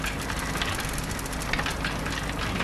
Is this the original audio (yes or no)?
yes